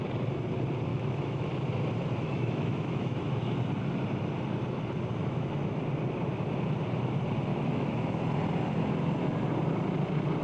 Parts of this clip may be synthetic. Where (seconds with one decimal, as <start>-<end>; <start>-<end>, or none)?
0.9-1.5; 2.2-3.6; 5.2-5.8; 7.5-8.2